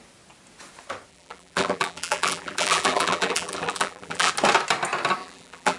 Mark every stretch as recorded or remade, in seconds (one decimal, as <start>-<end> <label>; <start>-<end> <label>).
0.0-1.1 recorded; 1.1-4.3 remade; 4.3-5.2 recorded; 5.2-5.8 remade